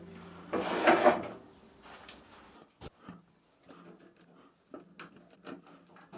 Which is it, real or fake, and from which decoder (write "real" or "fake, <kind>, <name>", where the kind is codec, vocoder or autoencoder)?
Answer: real